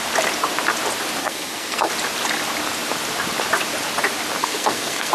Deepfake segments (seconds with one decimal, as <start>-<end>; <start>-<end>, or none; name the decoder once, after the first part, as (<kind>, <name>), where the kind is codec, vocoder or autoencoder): 1.2-1.9 (codec, SNAC); 4.4-5.1